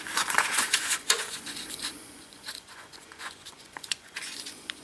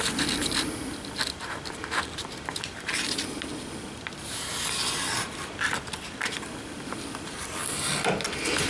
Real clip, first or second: second